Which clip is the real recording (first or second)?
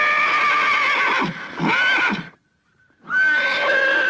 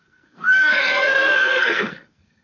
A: first